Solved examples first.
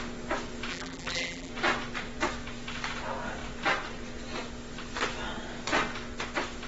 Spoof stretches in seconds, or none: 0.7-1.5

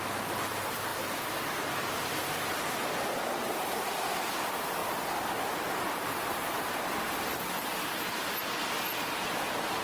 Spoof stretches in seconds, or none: 0.9-1.6